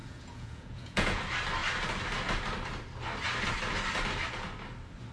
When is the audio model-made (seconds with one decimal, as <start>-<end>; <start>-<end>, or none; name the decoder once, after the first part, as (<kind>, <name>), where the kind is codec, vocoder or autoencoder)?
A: 0.0-1.2 (vocoder, Vocos)